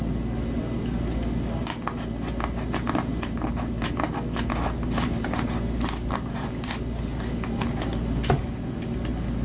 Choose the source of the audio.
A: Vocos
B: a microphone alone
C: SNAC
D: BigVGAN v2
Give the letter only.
B